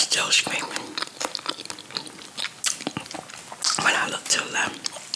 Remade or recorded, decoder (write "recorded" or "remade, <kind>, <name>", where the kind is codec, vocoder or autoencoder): recorded